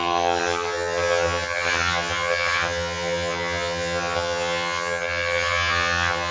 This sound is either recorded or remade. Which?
remade